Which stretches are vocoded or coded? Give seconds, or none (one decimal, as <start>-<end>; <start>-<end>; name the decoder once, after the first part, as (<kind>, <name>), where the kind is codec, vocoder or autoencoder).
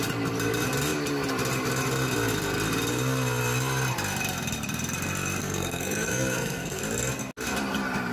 5.4-6.8 (codec, SNAC)